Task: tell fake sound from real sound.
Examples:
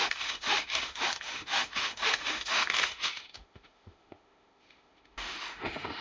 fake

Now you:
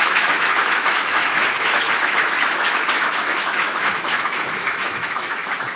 fake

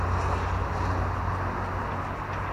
real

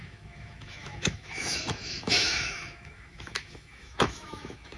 fake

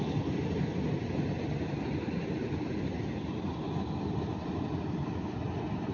real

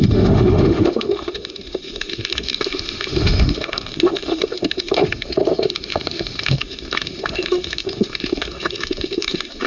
fake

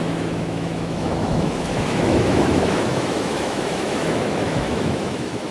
fake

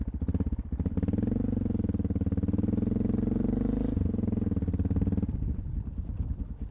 real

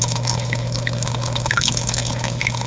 fake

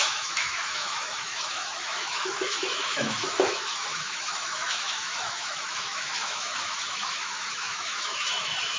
fake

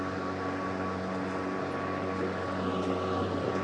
real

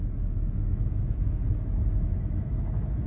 fake